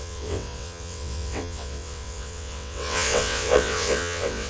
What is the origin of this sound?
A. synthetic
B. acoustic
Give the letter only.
A